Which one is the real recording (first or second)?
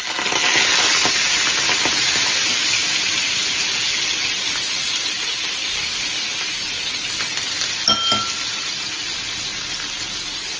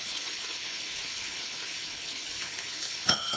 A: first